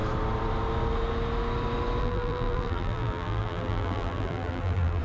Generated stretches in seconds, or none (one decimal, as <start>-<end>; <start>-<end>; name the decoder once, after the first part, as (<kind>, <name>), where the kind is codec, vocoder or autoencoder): 2.0-5.0 (vocoder, BigVGAN v2)